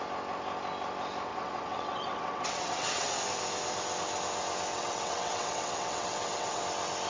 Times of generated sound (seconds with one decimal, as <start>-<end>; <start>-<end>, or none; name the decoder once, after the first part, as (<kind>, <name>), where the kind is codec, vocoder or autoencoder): 1.3-3.2 (vocoder, WaveNeXt); 4.7-6.6